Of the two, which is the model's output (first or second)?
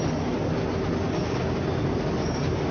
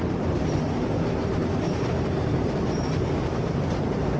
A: second